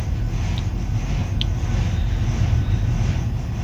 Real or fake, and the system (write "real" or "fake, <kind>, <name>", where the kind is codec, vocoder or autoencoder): real